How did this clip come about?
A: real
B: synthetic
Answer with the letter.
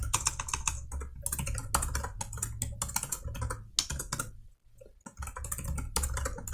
A